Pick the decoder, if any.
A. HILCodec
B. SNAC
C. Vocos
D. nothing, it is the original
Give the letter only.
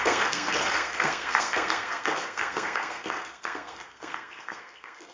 B